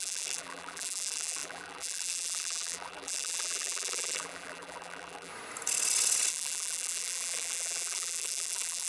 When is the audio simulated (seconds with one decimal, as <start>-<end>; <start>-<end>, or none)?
0.0-5.3; 6.3-8.9